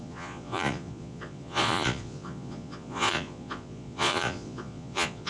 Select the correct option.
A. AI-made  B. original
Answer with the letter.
A